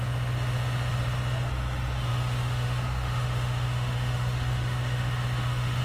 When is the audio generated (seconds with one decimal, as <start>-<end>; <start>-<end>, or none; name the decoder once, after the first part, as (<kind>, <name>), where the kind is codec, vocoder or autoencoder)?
2.1-5.8 (autoencoder, DAC-VAE)